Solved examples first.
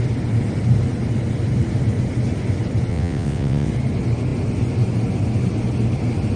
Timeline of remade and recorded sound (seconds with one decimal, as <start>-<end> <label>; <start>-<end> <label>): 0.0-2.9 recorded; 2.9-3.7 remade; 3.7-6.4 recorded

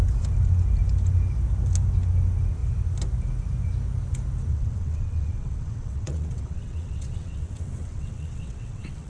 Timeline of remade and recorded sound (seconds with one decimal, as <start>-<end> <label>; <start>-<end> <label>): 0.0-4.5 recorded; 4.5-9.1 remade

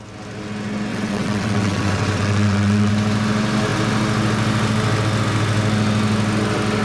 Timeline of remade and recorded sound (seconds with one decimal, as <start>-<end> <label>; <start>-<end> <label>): 0.0-0.9 recorded; 0.9-2.9 remade; 2.9-6.8 recorded

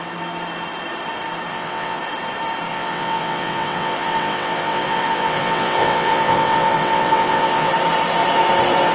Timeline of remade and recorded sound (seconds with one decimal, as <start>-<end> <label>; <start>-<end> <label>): 0.0-1.5 recorded; 1.5-2.0 remade; 2.0-2.7 recorded; 2.7-7.7 remade; 7.7-8.9 recorded

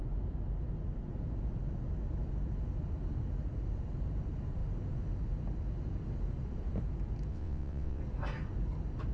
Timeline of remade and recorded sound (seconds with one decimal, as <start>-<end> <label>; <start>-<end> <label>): 0.0-7.3 recorded; 7.3-8.0 remade; 8.0-9.1 recorded

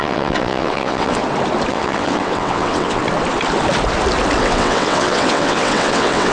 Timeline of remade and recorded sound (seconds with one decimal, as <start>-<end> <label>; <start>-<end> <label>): 0.0-1.2 remade; 1.2-1.7 recorded; 1.7-3.0 remade; 3.0-4.4 recorded; 4.4-6.3 remade